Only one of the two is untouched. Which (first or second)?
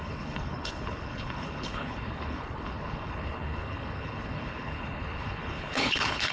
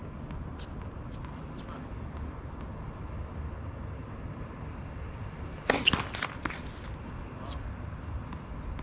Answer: second